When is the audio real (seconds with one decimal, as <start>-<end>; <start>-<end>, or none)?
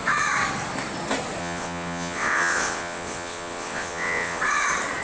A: 0.0-1.4; 4.4-5.0